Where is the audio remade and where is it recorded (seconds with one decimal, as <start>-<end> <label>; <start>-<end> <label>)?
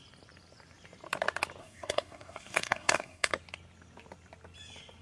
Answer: 0.0-1.6 recorded; 1.6-3.3 remade; 3.3-5.0 recorded